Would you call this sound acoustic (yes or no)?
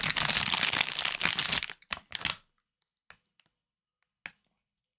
yes